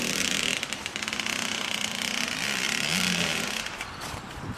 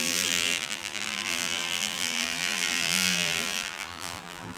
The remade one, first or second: second